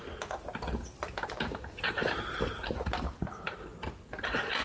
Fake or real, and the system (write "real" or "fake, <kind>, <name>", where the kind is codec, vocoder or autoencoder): real